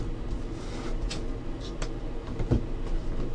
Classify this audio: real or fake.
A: real